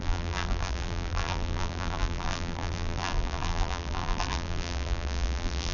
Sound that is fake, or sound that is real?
fake